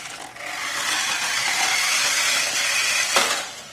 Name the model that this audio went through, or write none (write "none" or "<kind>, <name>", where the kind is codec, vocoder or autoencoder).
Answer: none